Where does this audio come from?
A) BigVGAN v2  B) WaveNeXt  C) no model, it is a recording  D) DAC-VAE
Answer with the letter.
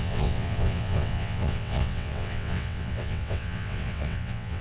B